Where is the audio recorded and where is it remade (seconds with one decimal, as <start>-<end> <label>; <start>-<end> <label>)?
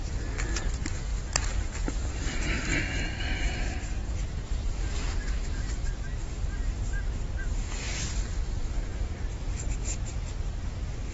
0.0-11.1 remade